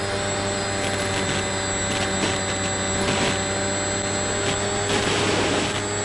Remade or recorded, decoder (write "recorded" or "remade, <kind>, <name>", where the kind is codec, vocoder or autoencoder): recorded